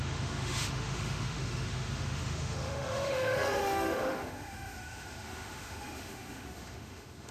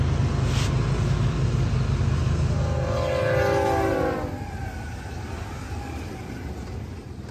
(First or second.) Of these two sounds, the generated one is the first